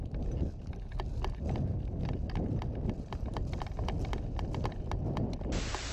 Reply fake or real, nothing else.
real